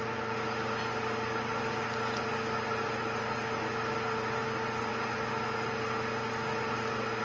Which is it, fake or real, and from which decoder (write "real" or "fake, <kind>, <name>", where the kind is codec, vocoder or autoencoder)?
real